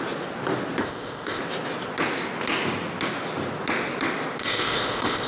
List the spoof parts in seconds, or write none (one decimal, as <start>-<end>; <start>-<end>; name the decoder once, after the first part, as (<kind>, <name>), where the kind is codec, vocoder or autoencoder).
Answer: 0.8-1.4 (codec, ZipCodec); 4.4-5.3